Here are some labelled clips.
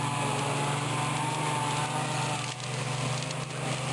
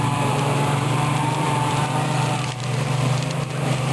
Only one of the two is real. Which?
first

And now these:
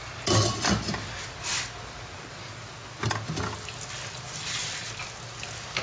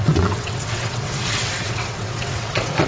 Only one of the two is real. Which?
first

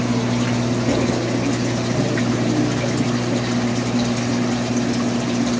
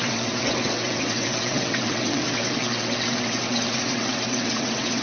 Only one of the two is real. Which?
first